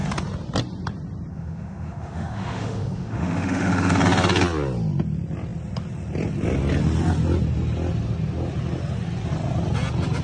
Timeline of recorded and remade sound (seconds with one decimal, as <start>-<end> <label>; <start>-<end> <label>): 0.0-1.3 recorded; 1.3-4.0 remade; 4.0-10.2 recorded